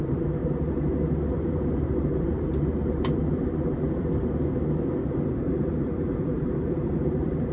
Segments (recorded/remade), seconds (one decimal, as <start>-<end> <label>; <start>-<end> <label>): 0.0-0.4 remade; 0.4-1.3 recorded; 1.3-4.4 remade; 4.4-5.5 recorded; 5.5-7.5 remade